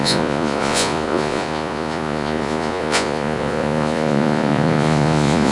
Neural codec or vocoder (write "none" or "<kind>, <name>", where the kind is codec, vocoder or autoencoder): vocoder, Vocos